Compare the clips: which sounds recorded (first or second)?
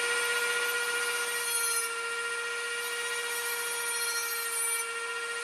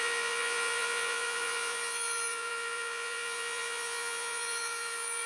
first